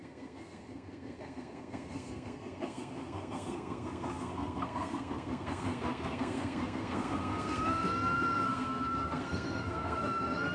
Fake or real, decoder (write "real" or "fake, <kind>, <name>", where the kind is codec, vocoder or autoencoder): fake, codec, SNAC